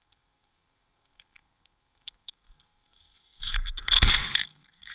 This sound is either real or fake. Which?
fake